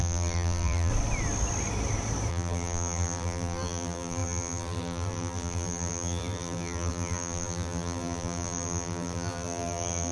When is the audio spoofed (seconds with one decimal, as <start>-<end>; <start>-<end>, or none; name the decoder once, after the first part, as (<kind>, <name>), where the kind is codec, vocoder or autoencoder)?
0.0-0.9 (vocoder, BigVGAN v2); 2.3-10.1